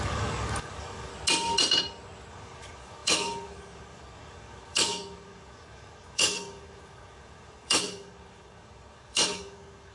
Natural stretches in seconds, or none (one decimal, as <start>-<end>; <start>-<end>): 1.1-2.3